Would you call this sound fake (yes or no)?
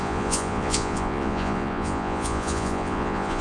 yes